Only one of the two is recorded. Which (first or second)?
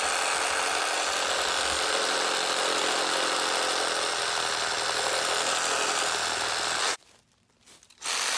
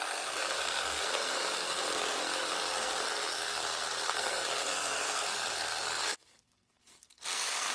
first